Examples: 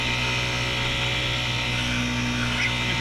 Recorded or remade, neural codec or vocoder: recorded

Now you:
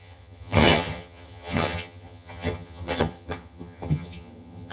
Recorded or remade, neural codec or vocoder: remade, vocoder, HiFi-GAN